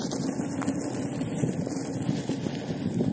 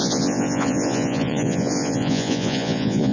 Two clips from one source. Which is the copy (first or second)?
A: second